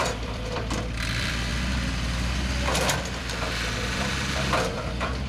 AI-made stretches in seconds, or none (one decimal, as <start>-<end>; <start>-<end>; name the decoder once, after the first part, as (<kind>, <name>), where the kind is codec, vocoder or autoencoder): 0.0-1.5 (vocoder, BigVGAN v2); 3.2-5.3